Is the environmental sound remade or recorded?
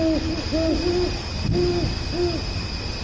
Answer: recorded